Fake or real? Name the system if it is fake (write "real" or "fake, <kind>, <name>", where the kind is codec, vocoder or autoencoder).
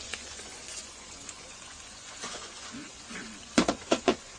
fake, vocoder, Vocos